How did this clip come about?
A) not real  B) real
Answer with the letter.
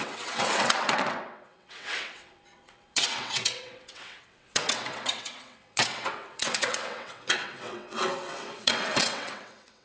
A